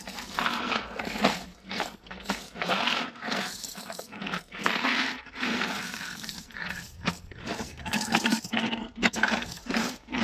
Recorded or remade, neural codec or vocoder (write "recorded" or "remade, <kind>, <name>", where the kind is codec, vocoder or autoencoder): remade, codec, SNAC